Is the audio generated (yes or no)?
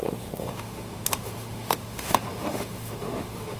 yes